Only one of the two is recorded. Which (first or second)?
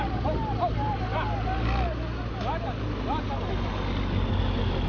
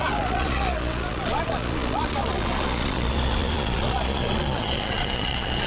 first